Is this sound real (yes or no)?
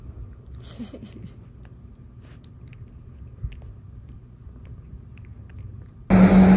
yes